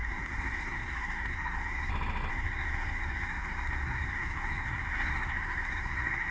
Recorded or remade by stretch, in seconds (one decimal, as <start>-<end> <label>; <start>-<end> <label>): 0.0-1.9 remade; 1.9-2.3 recorded; 2.3-6.3 remade